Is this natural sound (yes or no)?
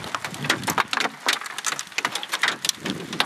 yes